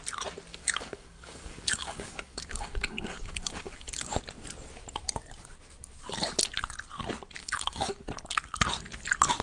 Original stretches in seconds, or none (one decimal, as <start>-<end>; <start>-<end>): 0.0-0.5; 4.2-7.4; 8.1-9.4